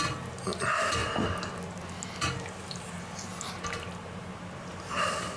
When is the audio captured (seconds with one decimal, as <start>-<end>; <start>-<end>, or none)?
0.0-5.4